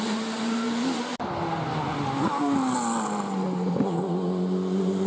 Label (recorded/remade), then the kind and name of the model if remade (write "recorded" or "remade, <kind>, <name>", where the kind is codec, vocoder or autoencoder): recorded